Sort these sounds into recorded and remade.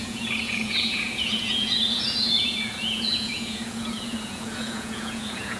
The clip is remade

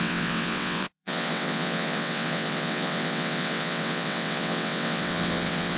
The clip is remade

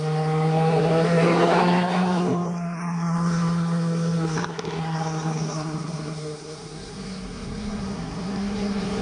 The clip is remade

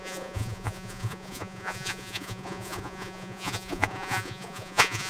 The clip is remade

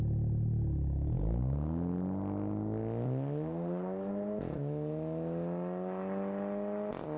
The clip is recorded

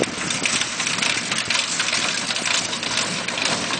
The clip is recorded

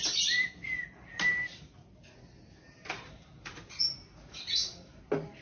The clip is recorded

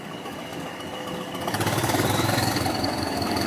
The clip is remade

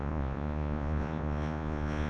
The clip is remade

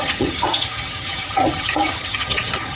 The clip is remade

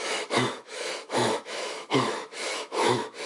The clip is remade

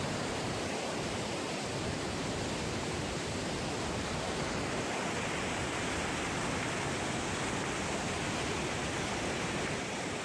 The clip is recorded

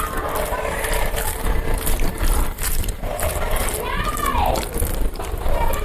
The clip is remade